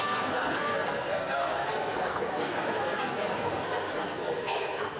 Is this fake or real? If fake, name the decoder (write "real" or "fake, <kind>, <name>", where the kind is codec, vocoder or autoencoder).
fake, codec, SNAC